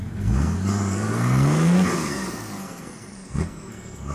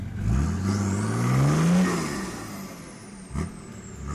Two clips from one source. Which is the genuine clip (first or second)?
second